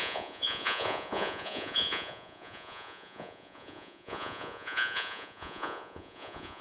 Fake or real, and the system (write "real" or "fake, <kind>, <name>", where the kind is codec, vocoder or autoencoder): fake, vocoder, Vocos